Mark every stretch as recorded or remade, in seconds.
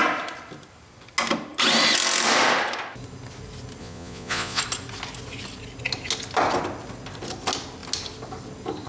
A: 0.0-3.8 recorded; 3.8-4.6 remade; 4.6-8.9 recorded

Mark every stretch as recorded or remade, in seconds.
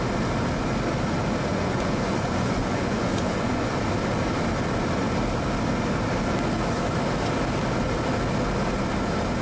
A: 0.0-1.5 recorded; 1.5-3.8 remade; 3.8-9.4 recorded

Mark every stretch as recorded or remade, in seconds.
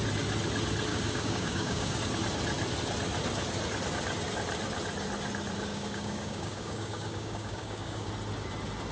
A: 0.0-0.9 recorded; 0.9-2.0 remade; 2.0-5.7 recorded; 5.7-8.1 remade; 8.1-8.9 recorded